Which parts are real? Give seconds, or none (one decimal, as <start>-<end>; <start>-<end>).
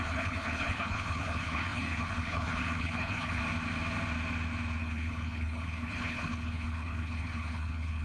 3.4-4.8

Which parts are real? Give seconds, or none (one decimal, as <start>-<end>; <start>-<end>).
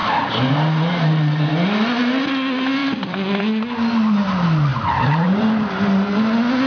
0.0-2.8; 3.4-4.7; 5.4-6.7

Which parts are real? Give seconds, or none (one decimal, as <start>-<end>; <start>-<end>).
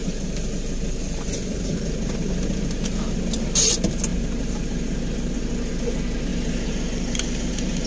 0.0-7.9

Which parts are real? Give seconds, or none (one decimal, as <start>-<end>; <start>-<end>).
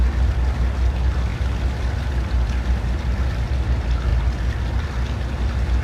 0.0-5.8